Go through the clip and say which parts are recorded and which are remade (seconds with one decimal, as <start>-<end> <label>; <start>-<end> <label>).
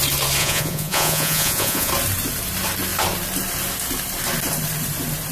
0.0-0.4 recorded; 0.4-1.9 remade; 1.9-5.3 recorded